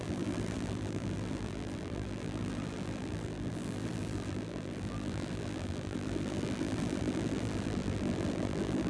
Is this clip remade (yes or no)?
yes